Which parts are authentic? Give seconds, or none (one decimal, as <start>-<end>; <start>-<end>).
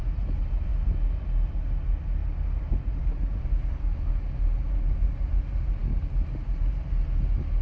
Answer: 0.0-7.6